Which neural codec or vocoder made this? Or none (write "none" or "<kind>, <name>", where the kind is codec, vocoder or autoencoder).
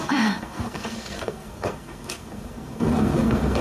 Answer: codec, SNAC